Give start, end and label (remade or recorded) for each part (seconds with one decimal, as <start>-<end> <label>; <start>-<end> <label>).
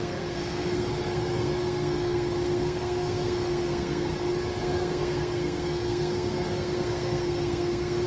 0.0-4.1 remade; 4.1-4.6 recorded; 4.6-8.1 remade